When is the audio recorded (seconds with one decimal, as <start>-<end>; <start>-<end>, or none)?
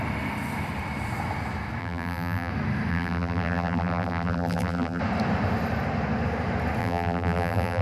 0.0-1.8; 2.5-2.9; 5.0-6.8